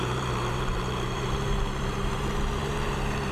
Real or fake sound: fake